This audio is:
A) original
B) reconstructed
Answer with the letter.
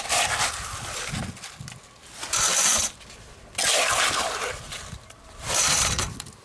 A